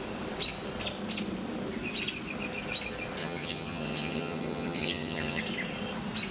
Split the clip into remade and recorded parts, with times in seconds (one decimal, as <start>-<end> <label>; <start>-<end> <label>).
0.0-3.2 recorded; 3.2-5.4 remade; 5.4-6.3 recorded